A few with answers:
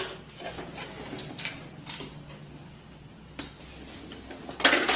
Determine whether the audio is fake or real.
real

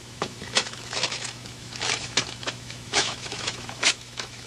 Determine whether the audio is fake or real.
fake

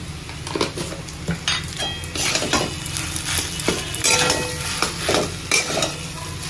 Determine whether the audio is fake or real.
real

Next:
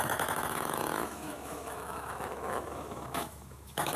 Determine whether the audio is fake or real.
fake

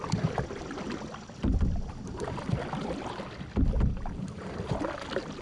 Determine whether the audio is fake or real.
real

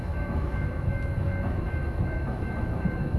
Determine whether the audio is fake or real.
fake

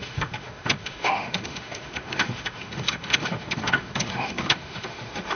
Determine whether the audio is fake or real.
fake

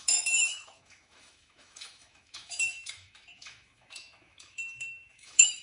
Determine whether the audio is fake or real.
fake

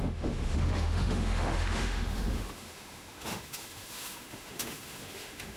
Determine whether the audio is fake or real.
fake